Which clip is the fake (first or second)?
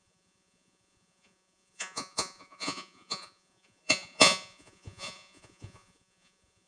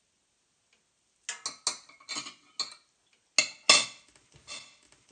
first